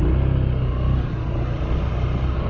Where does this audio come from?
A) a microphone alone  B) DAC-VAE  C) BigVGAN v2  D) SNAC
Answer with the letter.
A